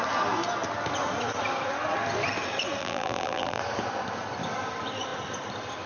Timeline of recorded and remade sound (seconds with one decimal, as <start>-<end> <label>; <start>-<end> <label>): 0.0-2.8 recorded; 2.8-3.6 remade; 3.6-5.9 recorded